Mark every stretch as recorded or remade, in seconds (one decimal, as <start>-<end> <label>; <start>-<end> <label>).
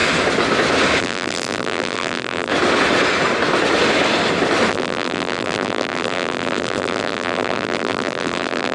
0.0-1.0 recorded; 1.0-2.5 remade; 2.5-4.7 recorded; 4.7-8.7 remade